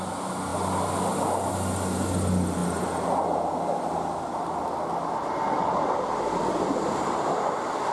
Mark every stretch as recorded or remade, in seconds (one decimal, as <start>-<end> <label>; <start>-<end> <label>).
0.0-7.9 recorded